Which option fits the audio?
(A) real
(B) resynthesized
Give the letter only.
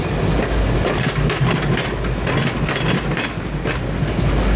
A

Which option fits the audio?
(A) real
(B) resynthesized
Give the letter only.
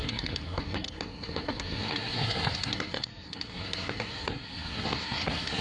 B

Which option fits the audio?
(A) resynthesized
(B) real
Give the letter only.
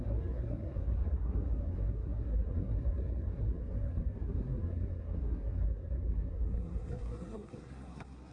A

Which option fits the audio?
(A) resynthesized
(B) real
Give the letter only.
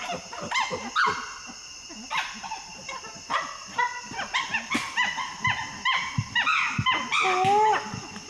B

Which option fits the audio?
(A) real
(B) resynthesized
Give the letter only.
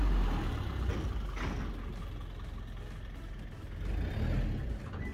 A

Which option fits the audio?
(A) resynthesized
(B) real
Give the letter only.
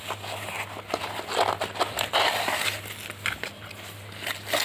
B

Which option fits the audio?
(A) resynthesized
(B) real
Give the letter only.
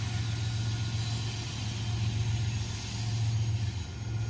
B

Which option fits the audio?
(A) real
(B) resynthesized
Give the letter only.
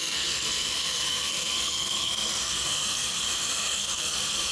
B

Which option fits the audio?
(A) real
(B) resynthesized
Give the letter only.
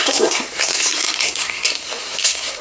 B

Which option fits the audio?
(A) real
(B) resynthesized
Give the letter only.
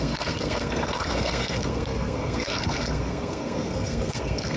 B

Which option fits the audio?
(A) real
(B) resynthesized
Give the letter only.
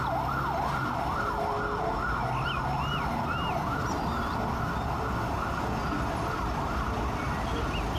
A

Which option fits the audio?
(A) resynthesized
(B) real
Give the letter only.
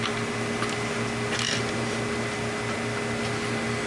B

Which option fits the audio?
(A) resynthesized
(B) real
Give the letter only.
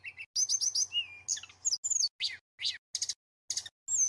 B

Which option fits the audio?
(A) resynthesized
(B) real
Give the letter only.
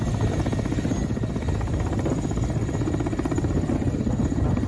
B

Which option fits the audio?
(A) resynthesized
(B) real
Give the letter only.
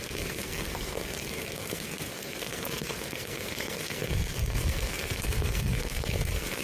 A